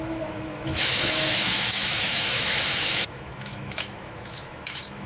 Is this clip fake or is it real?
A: fake